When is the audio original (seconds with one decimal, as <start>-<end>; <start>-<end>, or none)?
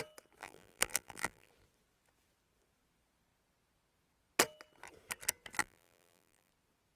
0.0-0.4; 1.5-5.6; 6.5-7.0